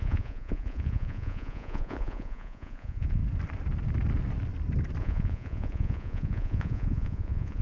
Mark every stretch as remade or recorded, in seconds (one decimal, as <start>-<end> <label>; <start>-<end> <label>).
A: 0.0-3.2 remade; 3.2-5.0 recorded; 5.0-7.6 remade